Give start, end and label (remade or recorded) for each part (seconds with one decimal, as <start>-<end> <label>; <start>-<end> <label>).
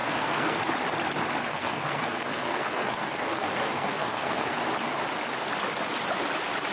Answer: 0.0-0.6 remade; 0.6-1.5 recorded; 1.5-4.6 remade; 4.6-6.7 recorded